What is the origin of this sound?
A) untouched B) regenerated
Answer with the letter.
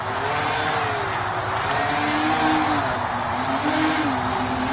A